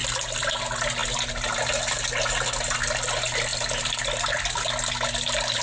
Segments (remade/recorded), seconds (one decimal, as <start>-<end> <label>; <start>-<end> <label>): 0.0-5.6 recorded